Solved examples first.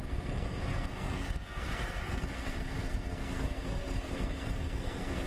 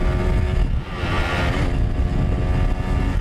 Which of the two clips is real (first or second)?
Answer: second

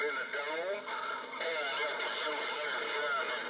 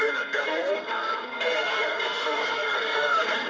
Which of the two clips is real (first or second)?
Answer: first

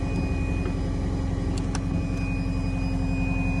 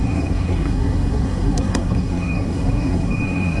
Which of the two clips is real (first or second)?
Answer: first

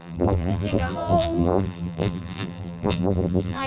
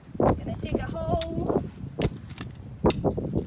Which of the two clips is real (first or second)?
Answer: second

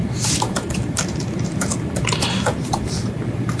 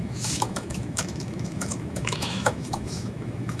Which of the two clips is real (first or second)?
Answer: first